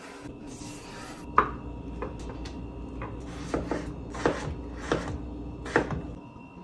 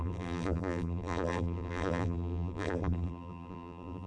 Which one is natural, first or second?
first